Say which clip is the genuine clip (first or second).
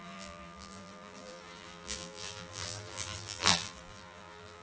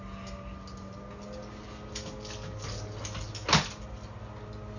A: second